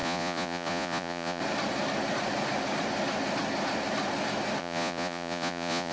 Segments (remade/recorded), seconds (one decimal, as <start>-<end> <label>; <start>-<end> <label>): 0.0-1.4 remade; 1.4-4.6 recorded; 4.6-5.9 remade